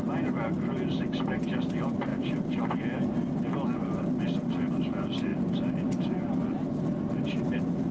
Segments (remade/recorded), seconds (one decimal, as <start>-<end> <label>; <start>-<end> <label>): 0.0-7.9 recorded